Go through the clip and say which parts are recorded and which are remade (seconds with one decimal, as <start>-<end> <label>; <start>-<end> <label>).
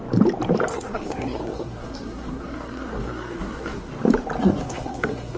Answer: 0.0-0.7 recorded; 0.7-3.9 remade; 3.9-4.4 recorded; 4.4-5.4 remade